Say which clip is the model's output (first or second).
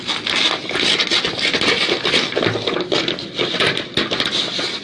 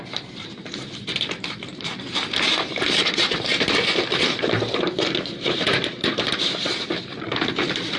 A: second